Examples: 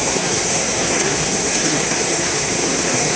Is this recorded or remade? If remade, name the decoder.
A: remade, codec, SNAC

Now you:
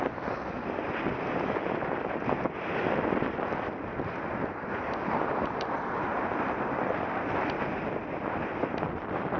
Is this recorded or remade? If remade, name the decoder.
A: recorded